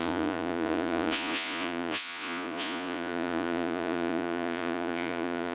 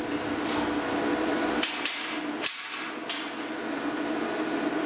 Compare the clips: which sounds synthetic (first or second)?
first